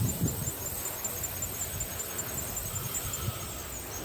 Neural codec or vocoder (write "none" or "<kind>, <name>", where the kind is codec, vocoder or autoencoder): none